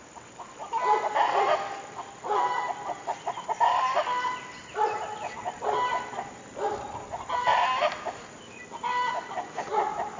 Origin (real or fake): real